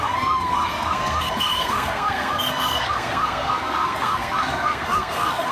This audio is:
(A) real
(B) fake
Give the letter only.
B